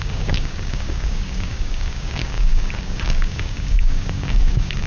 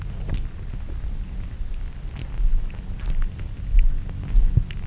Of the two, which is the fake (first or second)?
first